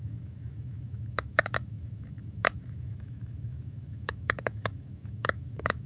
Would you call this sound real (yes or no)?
no